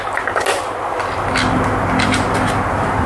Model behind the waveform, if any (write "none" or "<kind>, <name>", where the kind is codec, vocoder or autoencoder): none